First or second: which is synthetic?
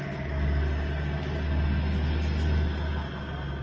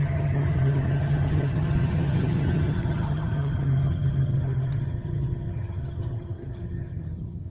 second